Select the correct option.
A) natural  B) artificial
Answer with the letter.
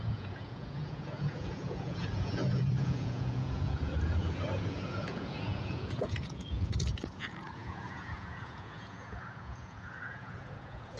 B